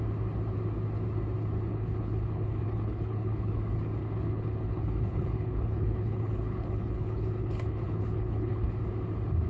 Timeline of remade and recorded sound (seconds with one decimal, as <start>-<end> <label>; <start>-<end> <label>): 0.0-1.7 recorded; 1.7-3.6 remade; 3.6-4.0 recorded; 4.0-8.8 remade; 8.8-9.5 recorded